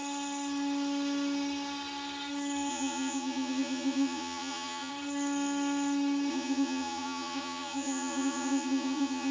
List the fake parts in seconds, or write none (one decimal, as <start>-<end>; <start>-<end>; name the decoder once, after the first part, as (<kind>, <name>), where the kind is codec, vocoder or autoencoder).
2.7-4.9 (vocoder, Vocos); 6.3-9.3